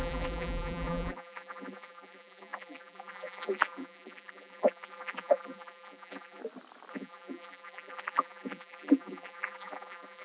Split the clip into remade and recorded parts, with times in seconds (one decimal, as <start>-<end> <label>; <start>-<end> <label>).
0.0-6.4 remade; 6.4-6.9 recorded; 6.9-10.2 remade